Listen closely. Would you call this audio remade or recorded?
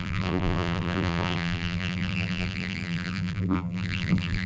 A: remade